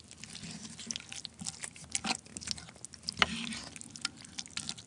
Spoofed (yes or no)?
no